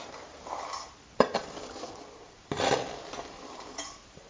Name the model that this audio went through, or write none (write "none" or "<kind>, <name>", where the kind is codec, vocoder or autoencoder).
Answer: vocoder, BigVGAN v2